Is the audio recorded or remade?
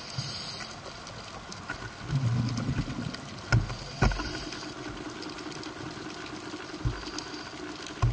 recorded